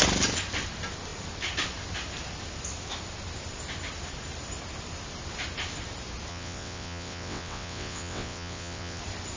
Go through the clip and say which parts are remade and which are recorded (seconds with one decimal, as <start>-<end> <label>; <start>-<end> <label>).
0.0-6.3 recorded; 6.3-9.0 remade; 9.0-9.4 recorded